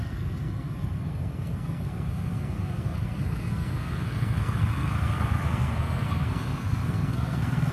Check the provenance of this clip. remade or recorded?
remade